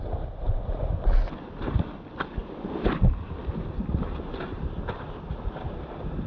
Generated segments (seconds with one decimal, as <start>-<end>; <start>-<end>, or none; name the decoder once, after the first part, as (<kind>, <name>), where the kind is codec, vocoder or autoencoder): none